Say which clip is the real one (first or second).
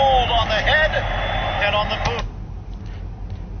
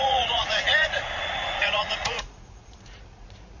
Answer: first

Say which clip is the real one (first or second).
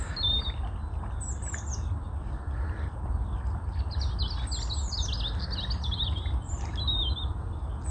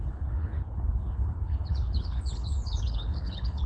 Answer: first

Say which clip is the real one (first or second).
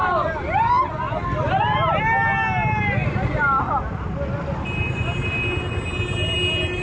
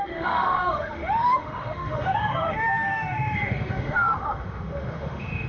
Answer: first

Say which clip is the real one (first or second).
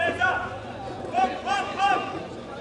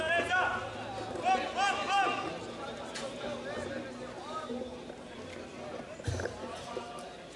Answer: second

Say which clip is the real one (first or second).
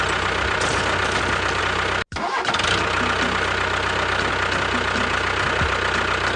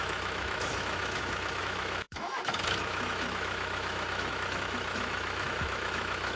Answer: first